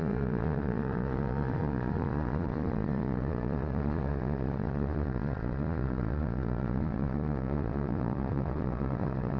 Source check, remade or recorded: remade